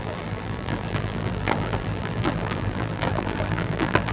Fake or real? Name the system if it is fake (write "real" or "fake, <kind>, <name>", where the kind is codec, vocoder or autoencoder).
fake, vocoder, BigVGAN v2